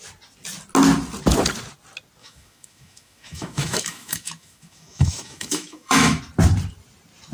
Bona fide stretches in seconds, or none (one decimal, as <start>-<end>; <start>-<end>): 0.0-2.2; 6.2-7.3